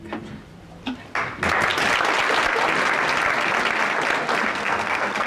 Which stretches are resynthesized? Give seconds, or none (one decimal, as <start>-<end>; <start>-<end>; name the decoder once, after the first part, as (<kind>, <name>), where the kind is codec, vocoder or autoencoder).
4.5-5.3 (codec, SNAC)